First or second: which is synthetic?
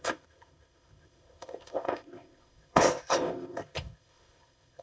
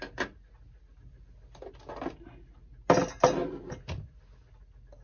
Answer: first